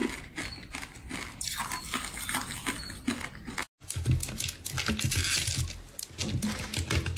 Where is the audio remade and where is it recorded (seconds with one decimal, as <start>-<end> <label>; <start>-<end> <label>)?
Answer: 0.0-1.8 remade; 1.8-7.2 recorded